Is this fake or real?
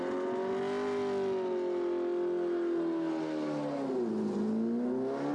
real